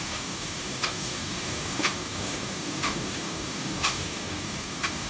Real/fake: fake